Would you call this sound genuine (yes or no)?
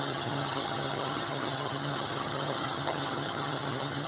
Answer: no